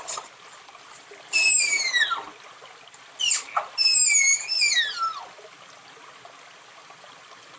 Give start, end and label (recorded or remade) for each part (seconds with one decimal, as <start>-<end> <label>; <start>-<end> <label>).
0.0-7.6 recorded